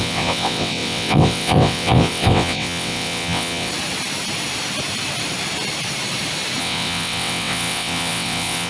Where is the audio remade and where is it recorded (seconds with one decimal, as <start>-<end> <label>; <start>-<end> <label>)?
0.0-3.7 remade; 3.7-6.6 recorded; 6.6-8.7 remade